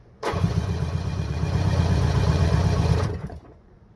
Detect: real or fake fake